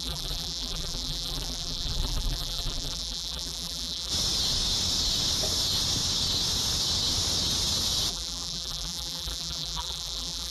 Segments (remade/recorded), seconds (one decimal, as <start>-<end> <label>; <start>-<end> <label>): 0.0-4.1 remade; 4.1-8.1 recorded; 8.1-10.5 remade